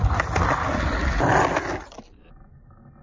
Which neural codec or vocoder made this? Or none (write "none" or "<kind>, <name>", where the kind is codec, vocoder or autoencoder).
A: none